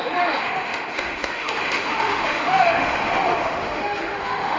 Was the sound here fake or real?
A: fake